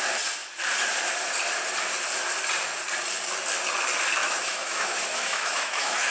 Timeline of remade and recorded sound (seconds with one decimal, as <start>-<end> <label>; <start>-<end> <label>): 0.0-4.2 recorded; 4.2-6.1 remade